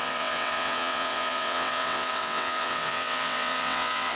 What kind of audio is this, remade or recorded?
remade